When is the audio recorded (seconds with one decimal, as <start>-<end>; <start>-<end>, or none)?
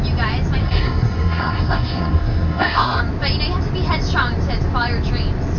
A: 0.0-0.6; 3.0-5.6